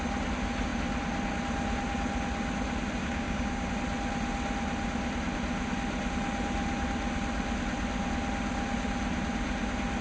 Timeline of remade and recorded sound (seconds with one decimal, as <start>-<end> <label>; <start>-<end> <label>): 0.0-3.0 recorded; 3.0-3.7 remade; 3.7-10.0 recorded